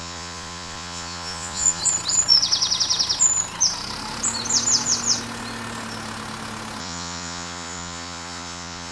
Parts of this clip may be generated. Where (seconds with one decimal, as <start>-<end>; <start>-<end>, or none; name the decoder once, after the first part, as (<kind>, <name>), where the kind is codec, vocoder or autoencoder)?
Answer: 0.0-1.8 (vocoder, Vocos); 6.8-8.9